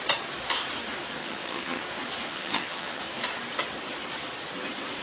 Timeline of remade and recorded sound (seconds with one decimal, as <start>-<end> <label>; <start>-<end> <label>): 0.0-1.2 recorded; 1.2-1.8 remade; 1.8-2.3 recorded; 2.3-3.0 remade; 3.0-5.0 recorded

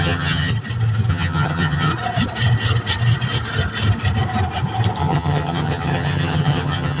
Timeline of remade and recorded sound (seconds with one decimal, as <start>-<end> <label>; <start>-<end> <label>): 0.0-0.5 remade; 0.5-1.1 recorded; 1.1-1.9 remade; 1.9-5.0 recorded; 5.0-7.0 remade

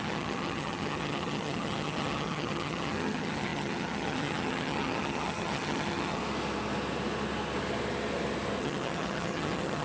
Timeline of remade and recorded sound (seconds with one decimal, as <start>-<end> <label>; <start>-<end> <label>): 0.0-6.2 remade; 6.2-8.6 recorded; 8.6-9.8 remade

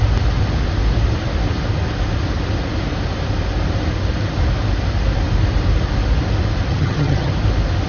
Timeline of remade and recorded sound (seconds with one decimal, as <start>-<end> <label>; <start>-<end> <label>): 0.0-6.7 recorded; 6.7-7.3 remade; 7.3-7.9 recorded